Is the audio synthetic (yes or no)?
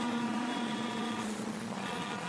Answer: yes